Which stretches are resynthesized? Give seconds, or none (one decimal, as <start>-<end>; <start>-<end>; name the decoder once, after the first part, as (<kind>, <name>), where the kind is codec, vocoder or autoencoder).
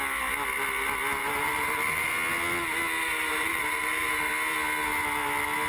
1.2-2.1 (vocoder, BigVGAN v2); 3.0-4.3